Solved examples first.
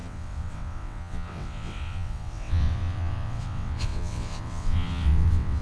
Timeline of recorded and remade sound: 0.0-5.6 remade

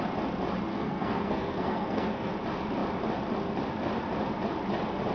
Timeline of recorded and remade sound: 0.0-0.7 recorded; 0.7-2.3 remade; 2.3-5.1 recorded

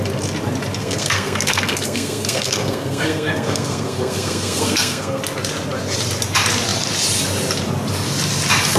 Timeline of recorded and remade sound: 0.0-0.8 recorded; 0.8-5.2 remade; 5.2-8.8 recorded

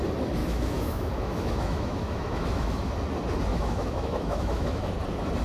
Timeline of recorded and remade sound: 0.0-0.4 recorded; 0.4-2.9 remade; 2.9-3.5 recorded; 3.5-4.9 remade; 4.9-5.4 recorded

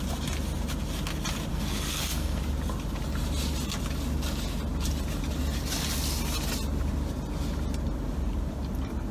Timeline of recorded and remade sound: 0.0-1.5 recorded; 1.5-2.4 remade; 2.4-9.1 recorded

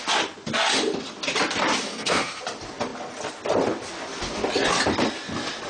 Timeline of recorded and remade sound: 0.0-1.9 recorded; 1.9-2.4 remade; 2.4-5.7 recorded